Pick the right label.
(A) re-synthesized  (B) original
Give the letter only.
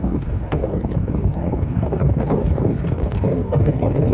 A